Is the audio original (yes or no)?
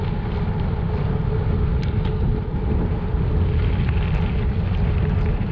yes